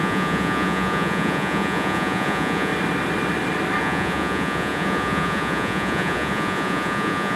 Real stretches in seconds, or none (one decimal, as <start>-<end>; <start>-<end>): 2.7-3.8